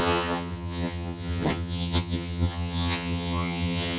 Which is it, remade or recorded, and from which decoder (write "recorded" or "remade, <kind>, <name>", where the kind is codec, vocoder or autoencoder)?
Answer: remade, vocoder, HiFi-GAN